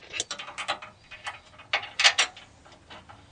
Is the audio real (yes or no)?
yes